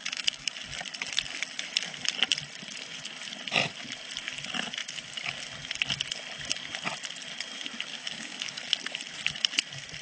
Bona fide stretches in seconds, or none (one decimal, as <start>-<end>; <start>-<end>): 0.5-7.9; 8.6-10.0